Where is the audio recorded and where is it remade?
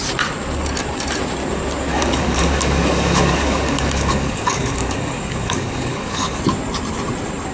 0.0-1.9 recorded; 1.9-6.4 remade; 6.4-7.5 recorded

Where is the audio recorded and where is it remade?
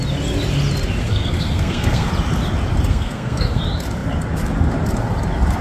0.0-1.0 recorded; 1.0-2.1 remade; 2.1-2.9 recorded; 2.9-3.6 remade; 3.6-5.6 recorded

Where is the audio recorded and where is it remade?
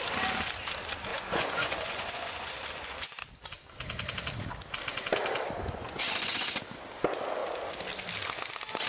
0.0-1.1 recorded; 1.1-3.2 remade; 3.2-5.6 recorded; 5.6-6.6 remade; 6.6-8.9 recorded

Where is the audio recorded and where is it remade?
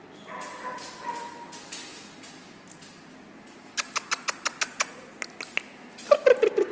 0.0-6.7 recorded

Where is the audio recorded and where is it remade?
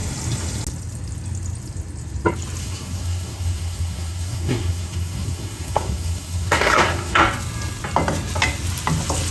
0.0-2.6 recorded; 2.6-7.2 remade; 7.2-9.3 recorded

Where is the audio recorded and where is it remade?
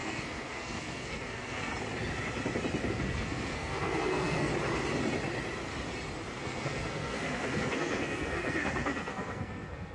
0.0-1.7 remade; 1.7-2.9 recorded; 2.9-4.5 remade; 4.5-6.4 recorded; 6.4-9.9 remade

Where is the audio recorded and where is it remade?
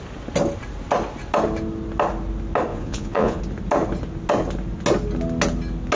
0.0-2.7 recorded; 2.7-3.4 remade; 3.4-6.0 recorded